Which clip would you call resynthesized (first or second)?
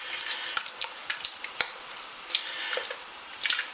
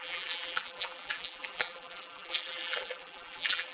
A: second